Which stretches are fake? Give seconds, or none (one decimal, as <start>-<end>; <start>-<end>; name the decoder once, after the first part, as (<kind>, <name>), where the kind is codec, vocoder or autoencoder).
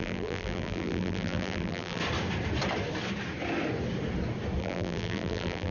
0.0-2.0 (vocoder, BigVGAN v2); 4.6-5.7